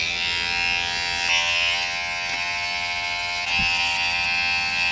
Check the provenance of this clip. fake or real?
real